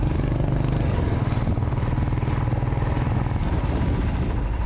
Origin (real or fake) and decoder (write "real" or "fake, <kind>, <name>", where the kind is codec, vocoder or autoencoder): real